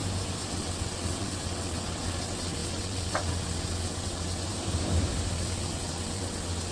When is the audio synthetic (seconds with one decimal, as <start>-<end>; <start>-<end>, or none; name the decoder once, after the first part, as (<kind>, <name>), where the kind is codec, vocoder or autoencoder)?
0.5-4.5 (vocoder, WaveNeXt); 5.3-6.7